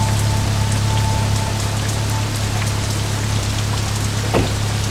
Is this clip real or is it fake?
real